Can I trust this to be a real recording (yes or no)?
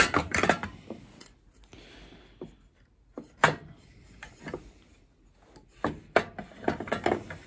yes